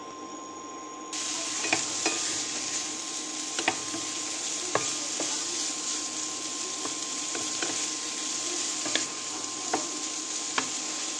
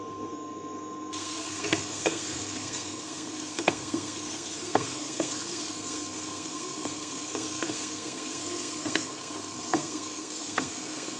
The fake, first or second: second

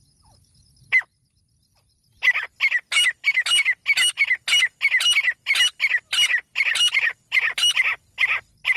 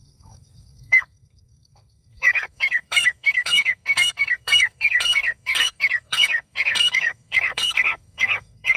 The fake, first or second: second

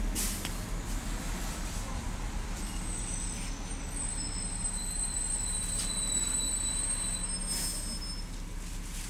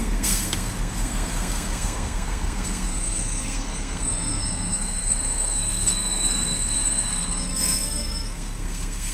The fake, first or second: second